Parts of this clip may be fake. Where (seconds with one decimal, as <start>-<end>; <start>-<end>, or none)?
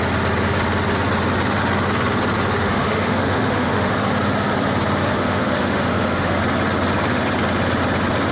2.6-3.9; 5.0-6.4